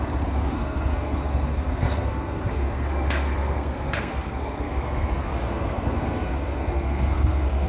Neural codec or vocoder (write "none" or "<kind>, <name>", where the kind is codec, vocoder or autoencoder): codec, SNAC